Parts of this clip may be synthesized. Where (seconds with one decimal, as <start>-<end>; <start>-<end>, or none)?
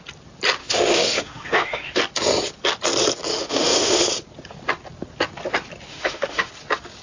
0.6-2.0; 3.3-4.1; 5.9-6.5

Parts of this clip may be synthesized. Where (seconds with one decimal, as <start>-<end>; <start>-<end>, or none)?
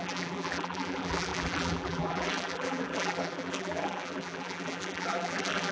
0.0-5.7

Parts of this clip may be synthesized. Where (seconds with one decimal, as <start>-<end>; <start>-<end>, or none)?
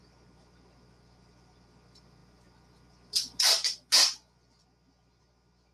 none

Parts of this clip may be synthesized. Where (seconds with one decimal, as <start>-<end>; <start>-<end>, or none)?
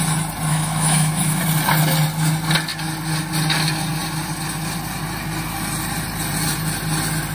0.5-1.4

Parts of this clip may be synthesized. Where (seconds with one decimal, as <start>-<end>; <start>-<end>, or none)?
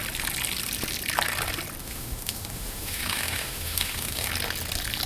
1.8-4.3